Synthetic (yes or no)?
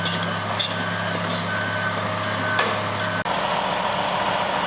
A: no